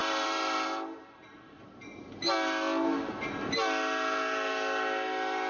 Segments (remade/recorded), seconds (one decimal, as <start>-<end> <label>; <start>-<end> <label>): 0.0-2.0 remade; 2.0-5.5 recorded